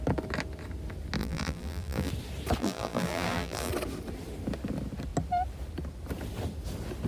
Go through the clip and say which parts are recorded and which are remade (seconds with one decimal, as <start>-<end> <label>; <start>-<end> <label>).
0.0-1.2 recorded; 1.2-2.1 remade; 2.1-2.6 recorded; 2.6-3.7 remade; 3.7-7.1 recorded